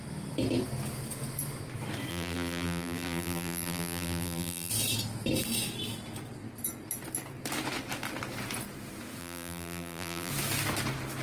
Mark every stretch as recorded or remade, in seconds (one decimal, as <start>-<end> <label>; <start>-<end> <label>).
0.0-2.1 recorded; 2.1-4.7 remade; 4.7-9.2 recorded; 9.2-10.3 remade; 10.3-11.2 recorded